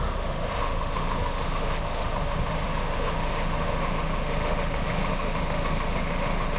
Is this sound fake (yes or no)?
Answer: yes